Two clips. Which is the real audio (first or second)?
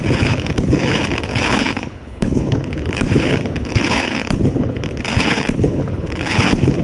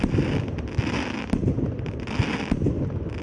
second